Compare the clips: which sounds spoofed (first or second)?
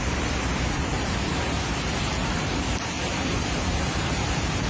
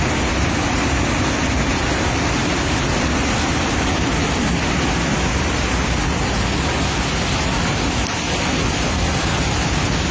first